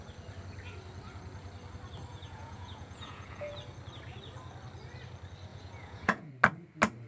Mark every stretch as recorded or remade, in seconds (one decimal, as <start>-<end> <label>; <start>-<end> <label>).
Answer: 0.0-2.1 recorded; 2.1-3.5 remade; 3.5-5.5 recorded; 5.5-6.3 remade; 6.3-7.1 recorded